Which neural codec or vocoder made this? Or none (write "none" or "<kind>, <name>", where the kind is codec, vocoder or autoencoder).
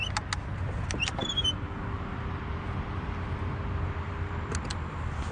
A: none